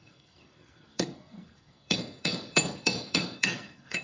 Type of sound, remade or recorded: remade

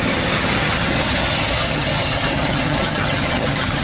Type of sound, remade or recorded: remade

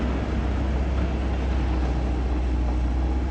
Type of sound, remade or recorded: recorded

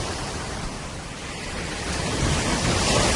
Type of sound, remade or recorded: recorded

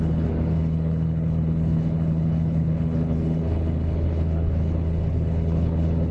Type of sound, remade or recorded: remade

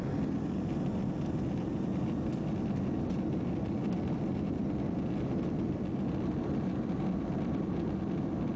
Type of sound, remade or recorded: recorded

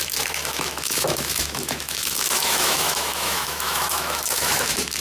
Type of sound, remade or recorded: remade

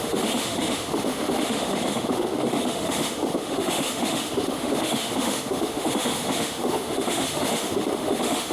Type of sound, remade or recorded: remade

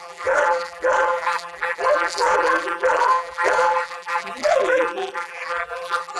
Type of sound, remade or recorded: remade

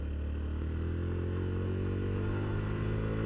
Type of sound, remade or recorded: recorded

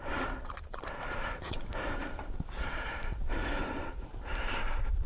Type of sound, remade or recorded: remade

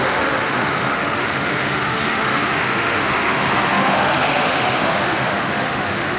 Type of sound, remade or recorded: remade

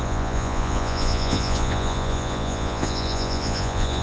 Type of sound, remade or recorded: remade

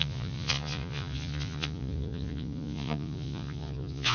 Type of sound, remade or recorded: remade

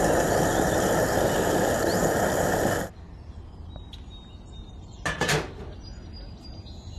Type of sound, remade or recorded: recorded